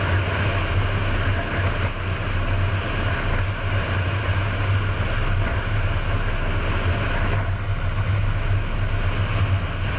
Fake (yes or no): no